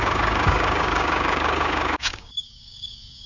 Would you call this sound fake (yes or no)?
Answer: yes